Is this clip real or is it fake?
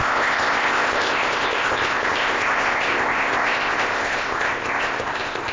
fake